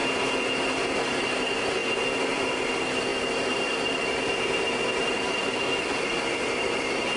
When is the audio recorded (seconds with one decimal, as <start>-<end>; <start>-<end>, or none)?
0.0-7.2